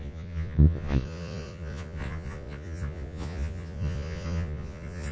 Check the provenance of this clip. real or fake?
fake